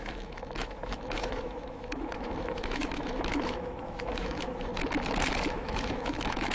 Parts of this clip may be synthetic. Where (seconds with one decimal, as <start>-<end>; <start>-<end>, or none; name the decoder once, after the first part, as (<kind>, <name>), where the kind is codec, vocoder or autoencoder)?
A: 0.0-4.7 (autoencoder, DAC-VAE); 5.5-6.5